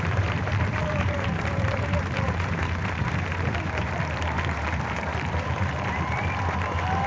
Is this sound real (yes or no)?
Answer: no